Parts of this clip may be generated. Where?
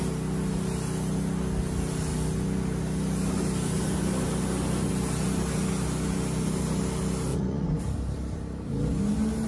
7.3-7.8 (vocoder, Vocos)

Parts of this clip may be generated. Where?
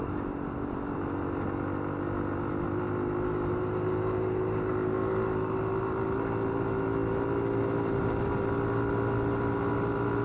none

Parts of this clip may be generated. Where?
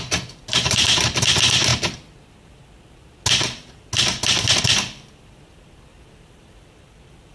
0.0-1.7 (vocoder, BigVGAN v2); 4.6-7.3